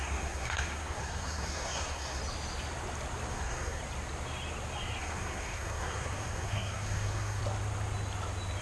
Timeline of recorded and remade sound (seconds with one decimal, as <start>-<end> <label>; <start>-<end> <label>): 0.0-2.2 remade; 2.2-3.3 recorded; 3.3-3.8 remade; 3.8-5.0 recorded; 5.0-7.4 remade; 7.4-8.6 recorded